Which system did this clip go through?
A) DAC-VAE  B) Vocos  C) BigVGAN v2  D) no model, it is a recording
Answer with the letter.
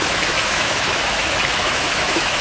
A